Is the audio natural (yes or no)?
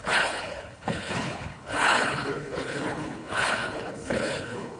no